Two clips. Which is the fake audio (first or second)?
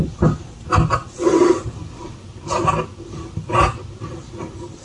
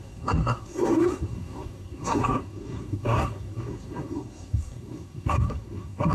second